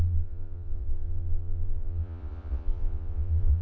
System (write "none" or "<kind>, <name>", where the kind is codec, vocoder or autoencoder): vocoder, Vocos